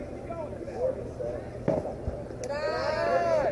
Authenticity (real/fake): real